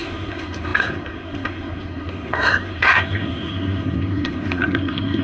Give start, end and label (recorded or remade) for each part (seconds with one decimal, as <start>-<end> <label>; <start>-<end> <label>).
0.0-5.2 remade

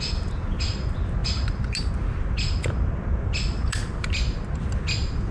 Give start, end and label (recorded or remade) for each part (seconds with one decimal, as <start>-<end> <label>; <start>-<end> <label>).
0.0-5.3 recorded

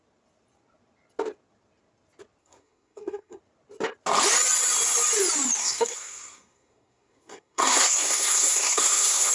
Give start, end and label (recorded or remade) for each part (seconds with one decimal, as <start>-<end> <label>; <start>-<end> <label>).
0.0-2.4 recorded; 2.4-3.4 remade; 3.4-5.6 recorded; 5.6-9.3 remade

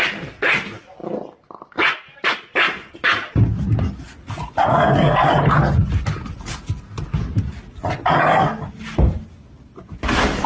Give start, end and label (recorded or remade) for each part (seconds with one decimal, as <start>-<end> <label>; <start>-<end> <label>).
0.0-10.5 recorded

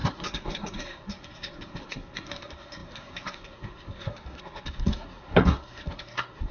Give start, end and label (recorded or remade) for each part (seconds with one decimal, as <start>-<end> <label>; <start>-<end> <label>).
0.0-6.5 remade

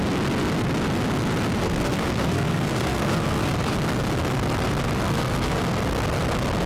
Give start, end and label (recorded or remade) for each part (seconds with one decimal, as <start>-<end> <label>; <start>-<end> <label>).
0.0-1.6 recorded; 1.6-3.7 remade; 3.7-5.1 recorded; 5.1-5.6 remade; 5.6-6.7 recorded

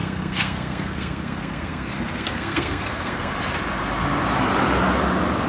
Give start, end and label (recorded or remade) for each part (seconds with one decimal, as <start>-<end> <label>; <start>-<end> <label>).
0.0-3.3 remade; 3.3-5.5 recorded

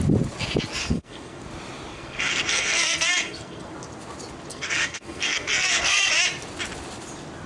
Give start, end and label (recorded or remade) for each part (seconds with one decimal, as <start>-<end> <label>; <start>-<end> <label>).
0.0-0.8 recorded; 0.8-1.4 remade; 1.4-1.9 recorded; 1.9-3.7 remade; 3.7-4.5 recorded; 4.5-6.1 remade; 6.1-7.5 recorded